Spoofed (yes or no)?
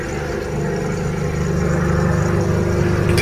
no